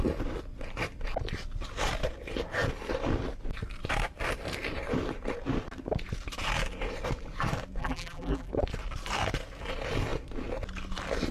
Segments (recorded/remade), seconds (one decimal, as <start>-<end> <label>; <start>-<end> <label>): 0.0-7.8 recorded; 7.8-8.5 remade; 8.5-11.3 recorded